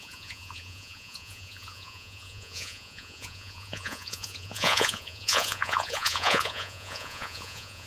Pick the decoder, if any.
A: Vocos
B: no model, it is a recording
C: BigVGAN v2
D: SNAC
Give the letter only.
A